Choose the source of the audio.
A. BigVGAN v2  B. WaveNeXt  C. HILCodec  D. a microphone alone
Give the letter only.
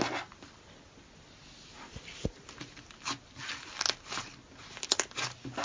D